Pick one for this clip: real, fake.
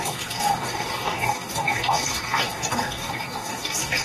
fake